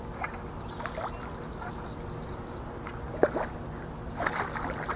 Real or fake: real